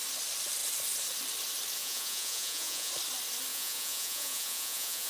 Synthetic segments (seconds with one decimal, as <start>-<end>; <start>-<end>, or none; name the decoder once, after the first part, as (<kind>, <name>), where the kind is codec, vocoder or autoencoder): 1.8-2.9 (vocoder, Vocos); 3.5-5.1